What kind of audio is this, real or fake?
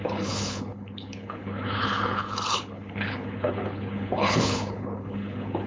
fake